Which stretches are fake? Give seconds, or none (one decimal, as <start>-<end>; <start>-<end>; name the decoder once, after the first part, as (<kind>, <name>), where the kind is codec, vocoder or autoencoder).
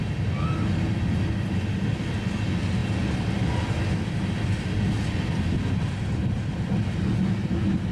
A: none